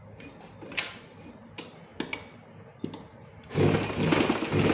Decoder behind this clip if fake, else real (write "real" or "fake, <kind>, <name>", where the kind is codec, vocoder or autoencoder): real